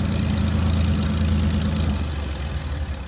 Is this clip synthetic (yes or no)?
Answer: no